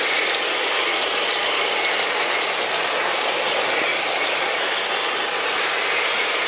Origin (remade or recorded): recorded